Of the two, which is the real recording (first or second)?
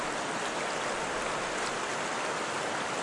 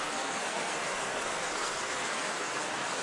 first